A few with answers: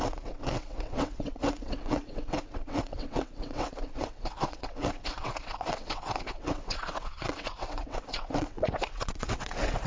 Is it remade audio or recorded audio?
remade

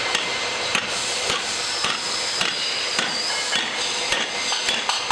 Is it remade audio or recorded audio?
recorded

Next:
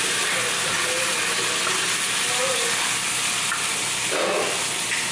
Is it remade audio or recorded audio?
recorded